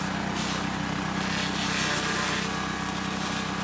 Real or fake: real